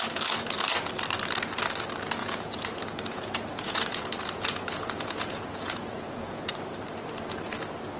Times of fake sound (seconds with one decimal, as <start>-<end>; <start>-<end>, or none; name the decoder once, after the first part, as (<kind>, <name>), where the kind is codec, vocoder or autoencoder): 2.2-6.5 (vocoder, Vocos)